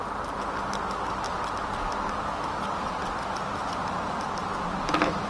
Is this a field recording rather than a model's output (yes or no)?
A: yes